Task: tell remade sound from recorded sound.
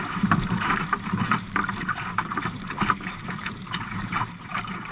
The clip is remade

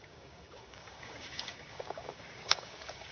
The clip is remade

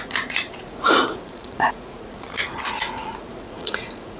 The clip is remade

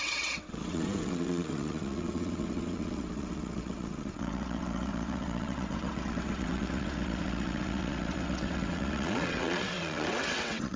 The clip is remade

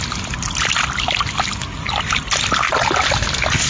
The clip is recorded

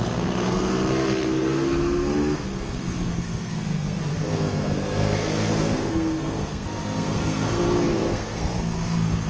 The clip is remade